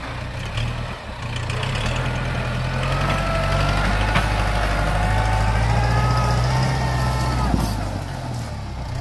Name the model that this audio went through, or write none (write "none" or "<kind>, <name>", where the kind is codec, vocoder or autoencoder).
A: none